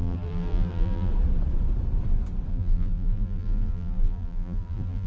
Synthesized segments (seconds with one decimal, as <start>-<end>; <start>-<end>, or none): 0.0-1.1; 2.5-5.1